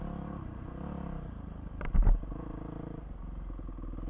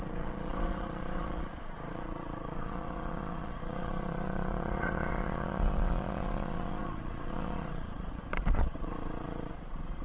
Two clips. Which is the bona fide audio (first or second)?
first